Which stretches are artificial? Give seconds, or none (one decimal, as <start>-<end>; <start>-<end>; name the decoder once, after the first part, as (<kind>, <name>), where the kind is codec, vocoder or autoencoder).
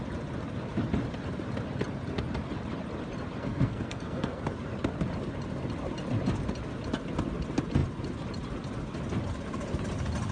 3.4-4.4 (codec, SNAC)